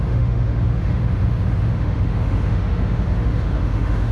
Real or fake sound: fake